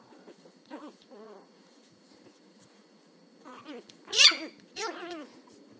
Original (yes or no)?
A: no